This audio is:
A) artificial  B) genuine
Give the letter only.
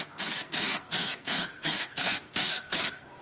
A